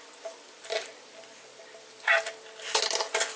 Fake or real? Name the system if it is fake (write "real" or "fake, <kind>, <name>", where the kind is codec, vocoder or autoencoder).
real